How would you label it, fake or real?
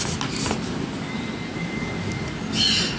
real